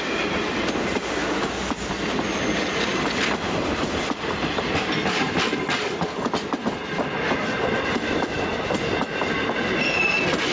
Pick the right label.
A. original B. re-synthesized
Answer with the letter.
A